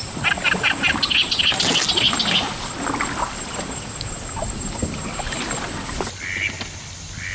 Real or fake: real